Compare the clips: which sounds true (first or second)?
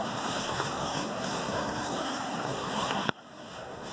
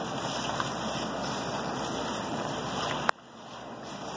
second